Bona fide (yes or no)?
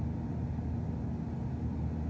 yes